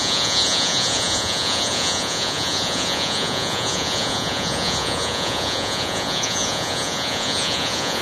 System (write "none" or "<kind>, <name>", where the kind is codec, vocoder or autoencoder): vocoder, Vocos